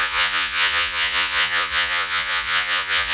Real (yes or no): no